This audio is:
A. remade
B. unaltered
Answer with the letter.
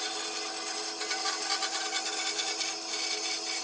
B